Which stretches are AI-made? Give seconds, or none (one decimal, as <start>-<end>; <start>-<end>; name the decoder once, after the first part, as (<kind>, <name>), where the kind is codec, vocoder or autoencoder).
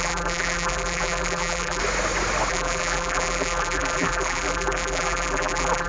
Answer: 0.0-1.8 (vocoder, BigVGAN v2); 2.5-5.9